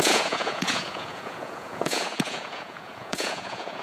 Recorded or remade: remade